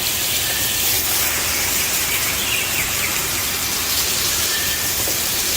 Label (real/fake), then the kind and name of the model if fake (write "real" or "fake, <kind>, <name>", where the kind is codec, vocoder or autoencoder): fake, vocoder, BigVGAN v2